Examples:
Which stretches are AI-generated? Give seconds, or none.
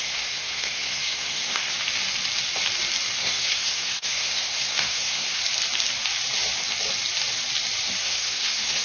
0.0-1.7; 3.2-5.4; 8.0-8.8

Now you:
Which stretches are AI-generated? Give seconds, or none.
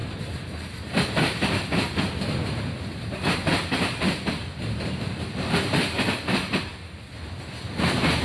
0.0-6.7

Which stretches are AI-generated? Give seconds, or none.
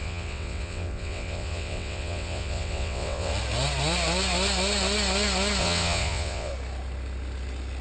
0.0-3.3; 5.6-6.5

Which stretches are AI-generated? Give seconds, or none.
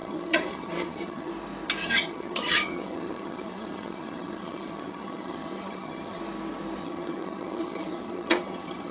0.0-1.3; 1.8-6.2; 6.8-8.9